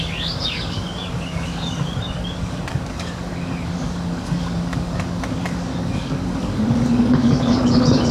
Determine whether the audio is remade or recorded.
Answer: remade